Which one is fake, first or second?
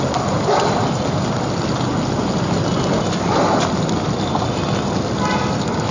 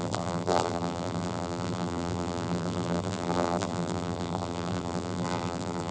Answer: second